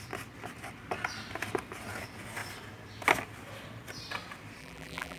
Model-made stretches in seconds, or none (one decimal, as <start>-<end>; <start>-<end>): 4.6-5.2